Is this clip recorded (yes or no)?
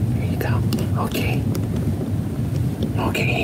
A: yes